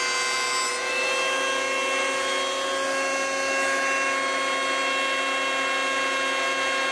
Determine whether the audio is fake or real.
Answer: real